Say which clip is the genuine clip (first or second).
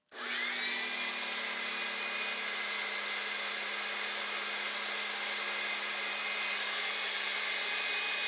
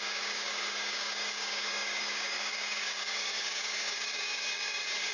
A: first